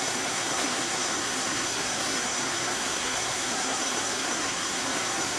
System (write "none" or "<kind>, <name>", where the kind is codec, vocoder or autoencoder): codec, SNAC